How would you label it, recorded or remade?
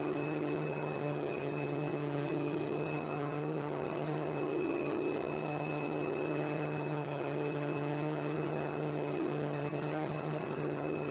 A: remade